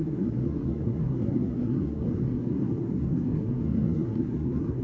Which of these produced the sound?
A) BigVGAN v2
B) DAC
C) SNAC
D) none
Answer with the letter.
C